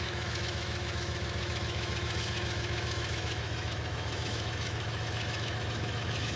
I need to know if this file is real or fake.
fake